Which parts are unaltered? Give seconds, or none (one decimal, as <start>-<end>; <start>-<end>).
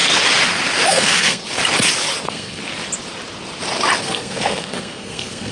0.0-0.9; 1.4-2.2; 2.6-4.0